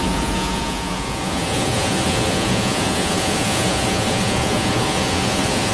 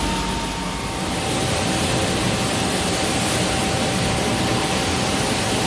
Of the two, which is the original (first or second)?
second